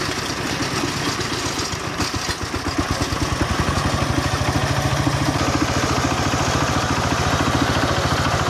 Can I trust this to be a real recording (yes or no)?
yes